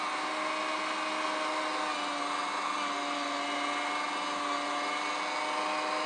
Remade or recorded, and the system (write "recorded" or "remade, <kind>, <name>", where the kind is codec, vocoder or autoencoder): recorded